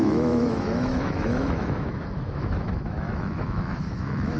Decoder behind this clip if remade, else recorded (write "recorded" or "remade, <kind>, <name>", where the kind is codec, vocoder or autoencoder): remade, autoencoder, DAC-VAE